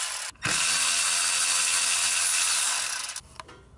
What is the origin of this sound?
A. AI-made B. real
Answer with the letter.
B